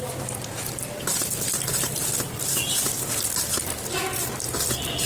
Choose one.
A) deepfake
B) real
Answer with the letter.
B